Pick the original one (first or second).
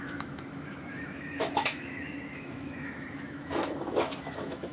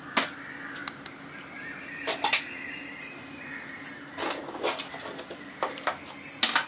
second